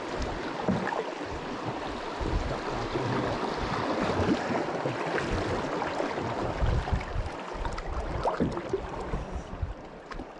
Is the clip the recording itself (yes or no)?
yes